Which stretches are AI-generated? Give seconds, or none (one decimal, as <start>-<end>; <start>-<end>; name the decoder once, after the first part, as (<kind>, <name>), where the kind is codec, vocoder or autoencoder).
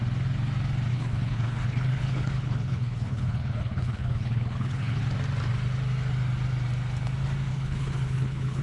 0.9-5.0 (codec, HILCodec); 7.5-8.6